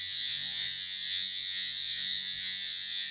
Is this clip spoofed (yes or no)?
yes